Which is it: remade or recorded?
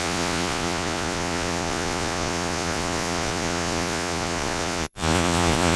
remade